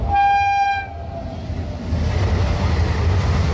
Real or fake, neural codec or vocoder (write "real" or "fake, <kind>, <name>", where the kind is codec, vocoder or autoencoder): real